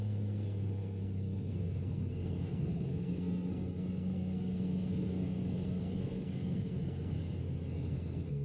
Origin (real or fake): fake